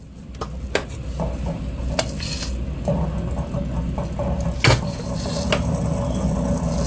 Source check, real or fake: real